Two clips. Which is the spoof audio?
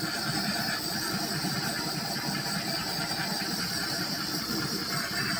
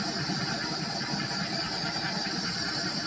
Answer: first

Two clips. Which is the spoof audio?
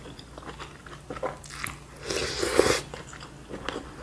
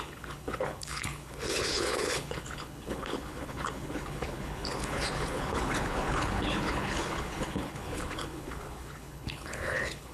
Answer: second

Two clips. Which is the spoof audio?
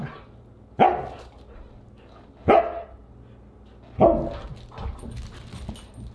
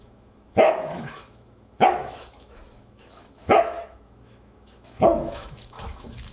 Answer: second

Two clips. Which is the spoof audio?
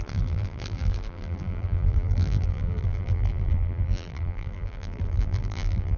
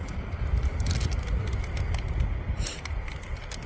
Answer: first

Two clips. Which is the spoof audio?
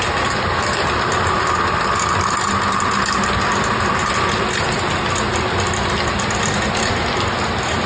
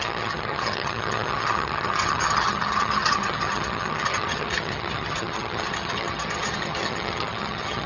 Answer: second